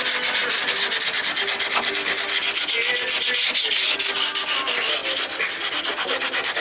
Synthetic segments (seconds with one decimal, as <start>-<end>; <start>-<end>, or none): none